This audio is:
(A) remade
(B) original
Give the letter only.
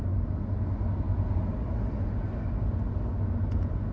B